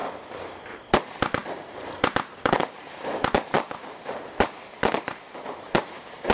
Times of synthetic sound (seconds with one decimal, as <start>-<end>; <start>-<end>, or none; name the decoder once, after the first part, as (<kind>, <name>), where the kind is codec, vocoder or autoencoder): 0.9-6.3 (vocoder, BigVGAN v2)